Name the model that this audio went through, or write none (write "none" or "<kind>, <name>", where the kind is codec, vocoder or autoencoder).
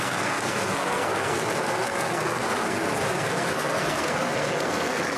codec, SNAC